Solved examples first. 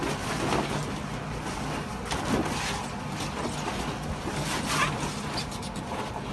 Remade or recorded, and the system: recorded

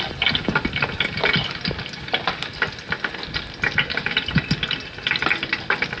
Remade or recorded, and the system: recorded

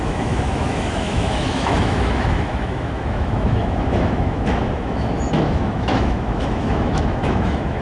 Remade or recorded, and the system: remade, autoencoder, DAC-VAE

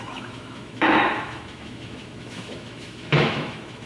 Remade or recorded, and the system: remade, autoencoder, DAC-VAE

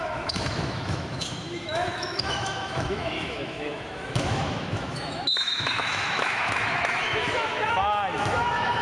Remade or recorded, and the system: remade, autoencoder, DAC-VAE